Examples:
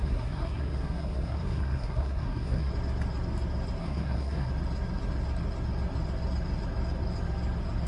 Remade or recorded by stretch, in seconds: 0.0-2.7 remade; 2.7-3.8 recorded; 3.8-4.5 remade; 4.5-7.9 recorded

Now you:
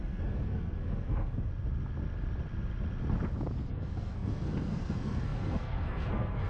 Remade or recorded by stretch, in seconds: 0.0-1.5 remade; 1.5-3.7 recorded; 3.7-6.5 remade

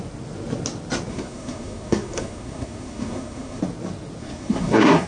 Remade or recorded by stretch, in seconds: 0.0-1.1 recorded; 1.1-3.6 remade; 3.6-4.2 recorded; 4.2-5.1 remade

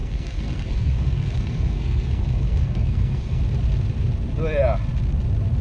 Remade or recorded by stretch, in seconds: 0.0-3.4 remade; 3.4-5.6 recorded

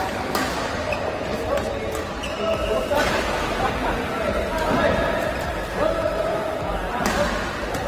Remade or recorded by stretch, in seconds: 0.0-7.9 recorded

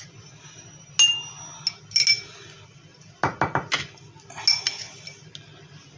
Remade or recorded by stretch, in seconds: 0.0-6.0 recorded